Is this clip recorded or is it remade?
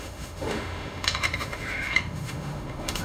remade